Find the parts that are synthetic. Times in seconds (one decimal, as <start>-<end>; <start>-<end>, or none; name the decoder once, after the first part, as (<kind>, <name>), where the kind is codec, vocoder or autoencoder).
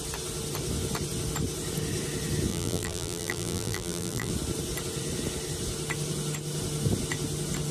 2.5-4.3 (vocoder, BigVGAN v2)